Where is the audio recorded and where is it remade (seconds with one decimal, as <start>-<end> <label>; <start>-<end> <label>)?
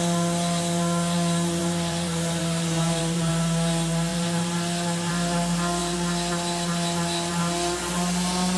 0.0-1.6 recorded; 1.6-3.3 remade; 3.3-4.1 recorded; 4.1-5.1 remade; 5.1-8.6 recorded